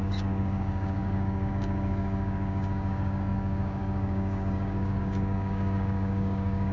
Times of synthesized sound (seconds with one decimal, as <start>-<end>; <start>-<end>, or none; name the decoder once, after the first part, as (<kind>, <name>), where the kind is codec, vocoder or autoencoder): 0.0-6.7 (codec, DAC)